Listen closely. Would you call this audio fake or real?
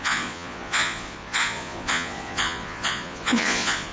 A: fake